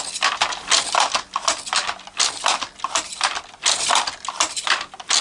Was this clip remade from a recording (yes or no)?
no